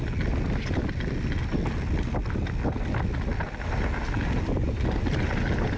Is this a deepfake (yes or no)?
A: no